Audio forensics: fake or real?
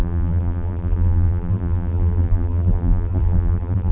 fake